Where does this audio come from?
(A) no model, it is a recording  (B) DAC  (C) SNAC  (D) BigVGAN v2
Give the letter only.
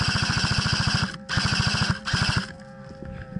A